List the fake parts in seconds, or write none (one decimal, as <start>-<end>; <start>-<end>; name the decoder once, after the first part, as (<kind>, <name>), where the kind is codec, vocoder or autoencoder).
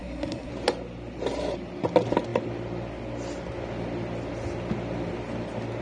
0.0-0.5 (codec, SNAC)